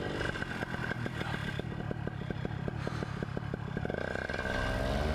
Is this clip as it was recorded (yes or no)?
yes